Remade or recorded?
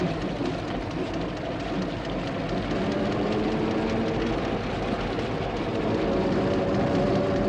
recorded